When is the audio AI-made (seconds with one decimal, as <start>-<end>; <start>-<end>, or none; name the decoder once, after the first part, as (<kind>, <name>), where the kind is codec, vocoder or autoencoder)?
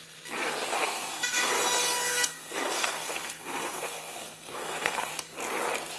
0.7-1.6 (codec, SNAC); 2.1-5.1